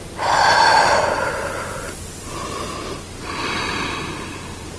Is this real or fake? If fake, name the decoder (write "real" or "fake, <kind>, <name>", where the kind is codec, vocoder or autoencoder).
real